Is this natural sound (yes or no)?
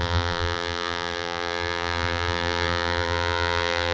no